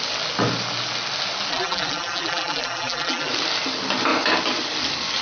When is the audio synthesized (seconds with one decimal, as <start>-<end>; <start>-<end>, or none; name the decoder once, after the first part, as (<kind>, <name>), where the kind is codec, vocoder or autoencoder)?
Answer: 1.5-3.3 (vocoder, BigVGAN v2)